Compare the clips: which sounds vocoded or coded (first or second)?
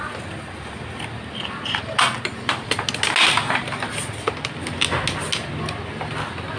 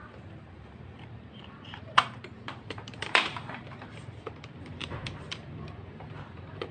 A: second